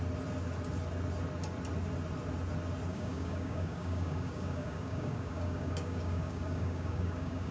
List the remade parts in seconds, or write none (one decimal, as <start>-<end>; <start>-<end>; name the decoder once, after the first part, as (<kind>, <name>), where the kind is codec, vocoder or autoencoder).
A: 2.9-7.5 (codec, DAC)